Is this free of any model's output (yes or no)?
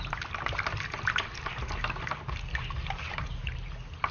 yes